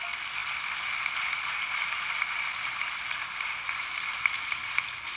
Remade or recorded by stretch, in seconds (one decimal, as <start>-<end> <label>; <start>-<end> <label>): 0.0-5.2 recorded